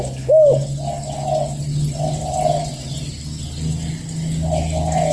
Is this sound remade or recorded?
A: recorded